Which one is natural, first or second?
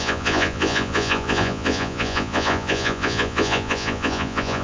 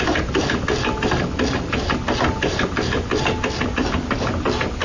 second